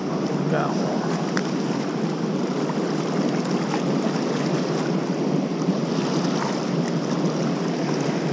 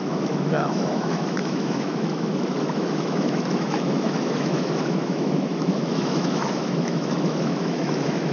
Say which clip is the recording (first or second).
first